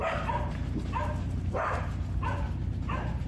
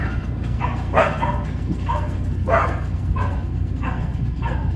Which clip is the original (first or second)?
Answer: first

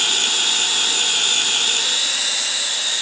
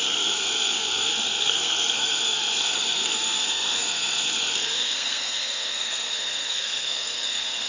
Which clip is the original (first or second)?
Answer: first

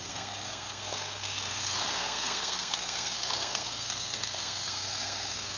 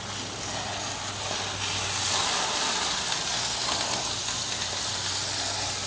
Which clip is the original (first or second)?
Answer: second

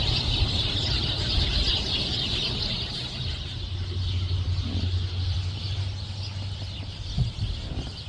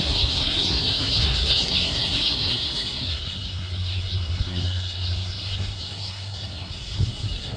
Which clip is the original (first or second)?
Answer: first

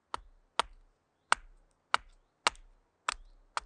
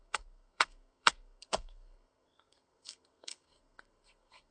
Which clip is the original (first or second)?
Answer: first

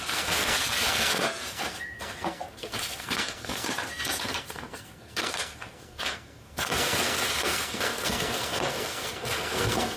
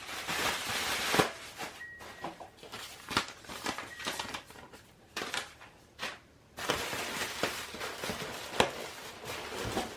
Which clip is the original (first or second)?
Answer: second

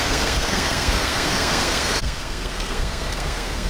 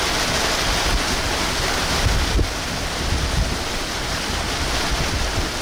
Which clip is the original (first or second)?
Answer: second